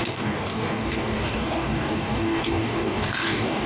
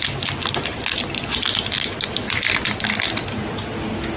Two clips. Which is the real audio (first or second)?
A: second